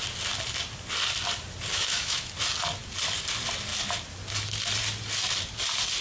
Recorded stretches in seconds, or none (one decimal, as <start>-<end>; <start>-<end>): 0.0-1.7; 2.3-6.0